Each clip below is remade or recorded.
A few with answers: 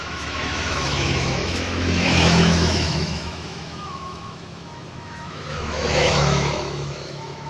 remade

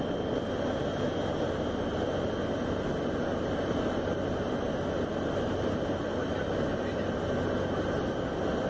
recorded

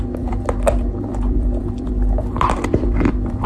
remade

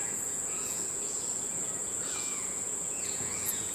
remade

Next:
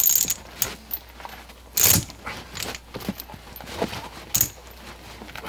recorded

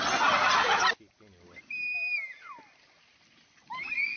recorded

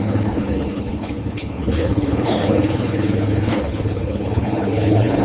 remade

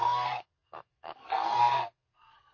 remade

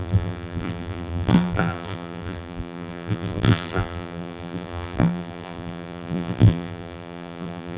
remade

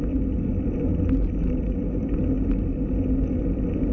recorded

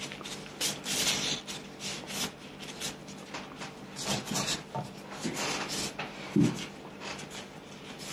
recorded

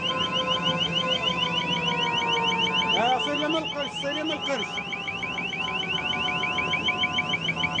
recorded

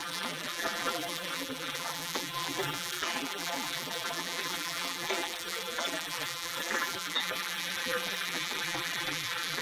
remade